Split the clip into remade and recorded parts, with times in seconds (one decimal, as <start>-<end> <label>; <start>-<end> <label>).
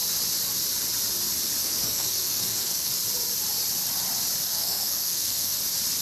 0.0-1.6 recorded; 1.6-2.9 remade; 2.9-4.5 recorded; 4.5-5.5 remade; 5.5-6.0 recorded